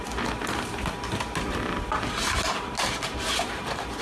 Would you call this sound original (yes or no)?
yes